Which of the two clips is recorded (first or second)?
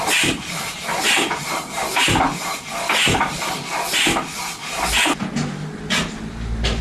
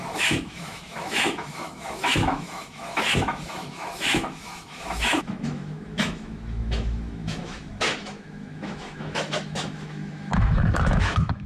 first